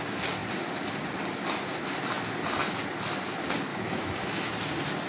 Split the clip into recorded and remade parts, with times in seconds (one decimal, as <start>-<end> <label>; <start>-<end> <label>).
0.0-3.7 recorded; 3.7-4.5 remade; 4.5-5.1 recorded